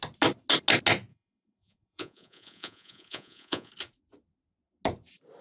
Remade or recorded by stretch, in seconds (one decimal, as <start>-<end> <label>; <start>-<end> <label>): 0.0-1.1 recorded; 1.1-3.7 remade; 3.7-5.4 recorded